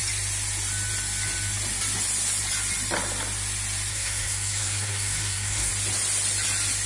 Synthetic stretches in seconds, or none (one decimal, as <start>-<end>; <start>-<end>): 3.9-5.7